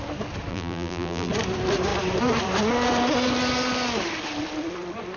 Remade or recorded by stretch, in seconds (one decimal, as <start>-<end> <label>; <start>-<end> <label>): 0.0-0.5 recorded; 0.5-1.3 remade; 1.3-5.2 recorded